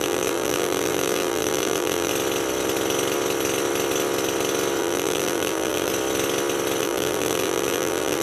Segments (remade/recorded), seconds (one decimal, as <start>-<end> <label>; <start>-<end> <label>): 0.0-2.1 remade; 2.1-4.8 recorded; 4.8-5.9 remade; 5.9-6.8 recorded; 6.8-8.2 remade